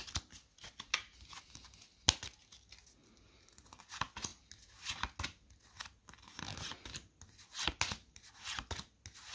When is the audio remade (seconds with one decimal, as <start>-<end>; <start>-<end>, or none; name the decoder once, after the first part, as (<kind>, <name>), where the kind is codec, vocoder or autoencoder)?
3.0-3.8 (vocoder, BigVGAN v2)